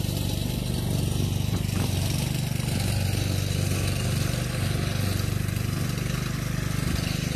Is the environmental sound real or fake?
real